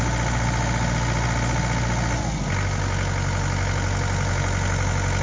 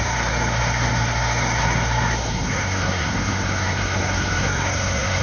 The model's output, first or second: second